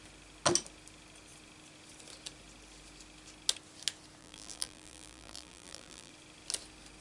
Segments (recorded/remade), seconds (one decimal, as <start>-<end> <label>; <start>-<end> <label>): 0.0-4.2 recorded; 4.2-6.1 remade; 6.1-7.0 recorded